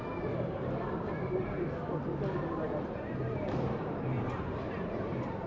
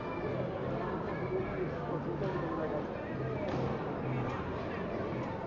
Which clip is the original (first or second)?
second